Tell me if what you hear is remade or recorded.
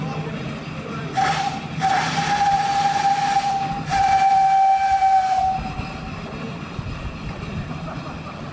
recorded